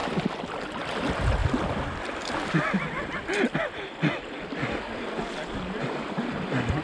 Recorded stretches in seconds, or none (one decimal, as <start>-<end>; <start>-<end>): 0.0-6.8